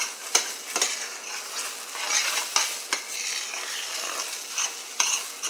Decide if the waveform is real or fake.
real